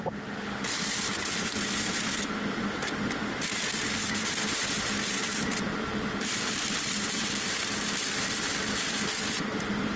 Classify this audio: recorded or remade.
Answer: recorded